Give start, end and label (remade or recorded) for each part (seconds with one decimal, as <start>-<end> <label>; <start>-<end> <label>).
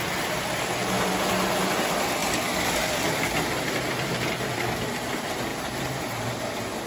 0.0-6.9 recorded